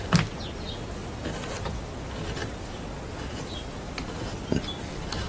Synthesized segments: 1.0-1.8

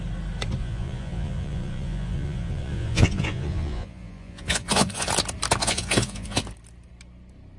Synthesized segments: 0.6-5.1; 5.6-6.4

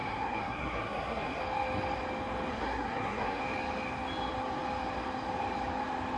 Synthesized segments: 0.0-1.4; 2.5-3.4